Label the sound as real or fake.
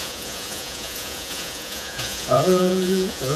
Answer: fake